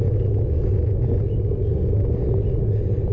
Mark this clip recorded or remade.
recorded